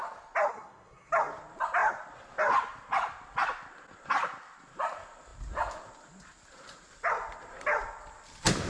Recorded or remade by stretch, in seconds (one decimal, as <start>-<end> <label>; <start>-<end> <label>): 0.0-0.5 recorded; 0.5-1.1 remade; 1.1-8.7 recorded